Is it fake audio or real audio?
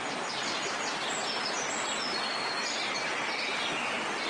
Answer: real